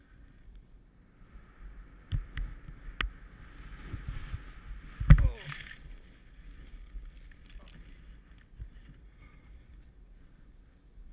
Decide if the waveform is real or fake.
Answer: real